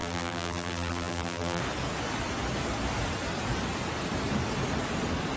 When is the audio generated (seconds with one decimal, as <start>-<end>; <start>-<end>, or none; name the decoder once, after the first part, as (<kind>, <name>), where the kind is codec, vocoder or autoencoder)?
0.0-1.6 (vocoder, BigVGAN v2)